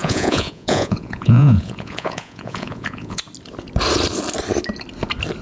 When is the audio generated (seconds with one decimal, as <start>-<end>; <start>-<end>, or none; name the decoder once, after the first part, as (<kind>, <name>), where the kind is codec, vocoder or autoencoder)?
0.0-3.2 (vocoder, Vocos)